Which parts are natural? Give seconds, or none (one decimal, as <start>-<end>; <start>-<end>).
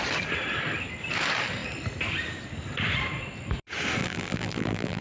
0.0-4.0